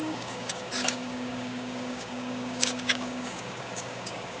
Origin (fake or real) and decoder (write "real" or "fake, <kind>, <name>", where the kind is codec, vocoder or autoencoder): fake, codec, DAC